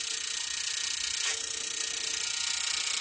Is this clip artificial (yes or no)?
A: no